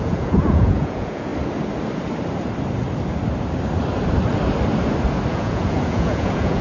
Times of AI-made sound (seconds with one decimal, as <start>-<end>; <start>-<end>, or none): 0.0-1.3; 5.3-6.6